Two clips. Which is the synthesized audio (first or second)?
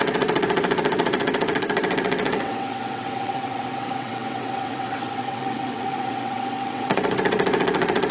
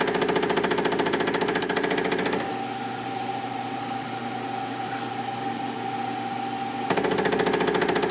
first